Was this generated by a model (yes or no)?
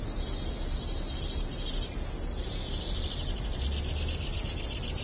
no